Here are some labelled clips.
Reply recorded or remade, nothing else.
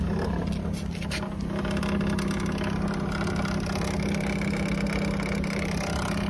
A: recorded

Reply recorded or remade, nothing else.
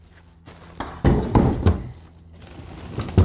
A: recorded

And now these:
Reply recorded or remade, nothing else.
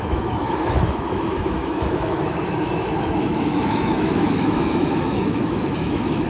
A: remade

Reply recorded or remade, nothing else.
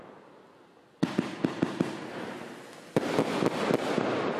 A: recorded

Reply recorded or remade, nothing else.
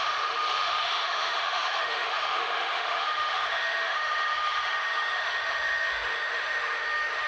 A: remade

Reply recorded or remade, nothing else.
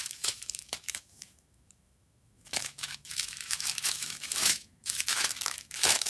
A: remade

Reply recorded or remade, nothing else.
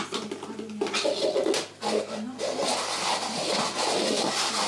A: recorded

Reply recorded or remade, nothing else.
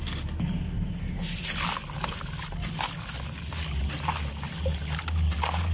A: recorded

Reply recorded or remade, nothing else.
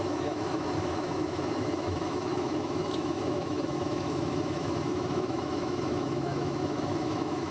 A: remade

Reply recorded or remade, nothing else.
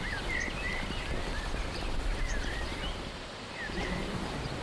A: recorded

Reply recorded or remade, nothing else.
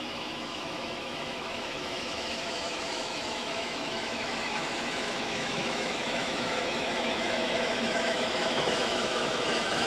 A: remade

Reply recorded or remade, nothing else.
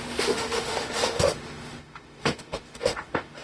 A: remade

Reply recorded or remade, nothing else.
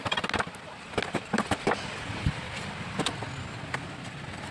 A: recorded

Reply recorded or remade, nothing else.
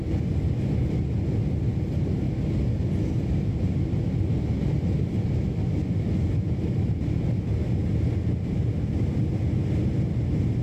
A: recorded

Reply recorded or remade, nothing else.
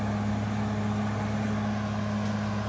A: recorded